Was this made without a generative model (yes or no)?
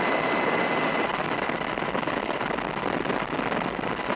yes